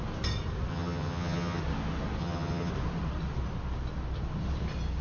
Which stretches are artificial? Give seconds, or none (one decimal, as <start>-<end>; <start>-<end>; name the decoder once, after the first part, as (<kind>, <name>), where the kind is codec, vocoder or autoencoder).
0.7-1.6 (vocoder, HiFi-GAN); 2.2-2.7